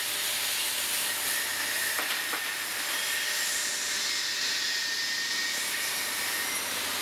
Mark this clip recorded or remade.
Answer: recorded